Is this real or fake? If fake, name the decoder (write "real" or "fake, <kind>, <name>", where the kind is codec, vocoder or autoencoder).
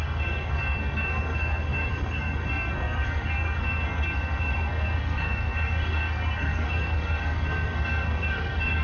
fake, codec, SNAC